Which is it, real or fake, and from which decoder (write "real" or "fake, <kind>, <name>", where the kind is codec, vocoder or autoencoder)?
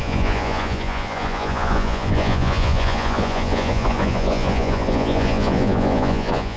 fake, vocoder, Vocos